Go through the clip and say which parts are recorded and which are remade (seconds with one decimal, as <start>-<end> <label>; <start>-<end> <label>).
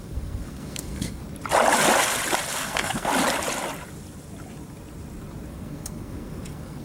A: 0.0-1.2 remade; 1.2-2.5 recorded; 2.5-3.1 remade; 3.1-5.5 recorded; 5.5-6.8 remade